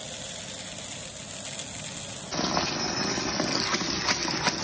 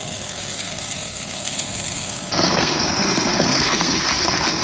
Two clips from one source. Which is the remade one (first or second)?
second